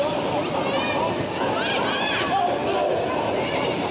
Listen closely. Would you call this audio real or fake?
real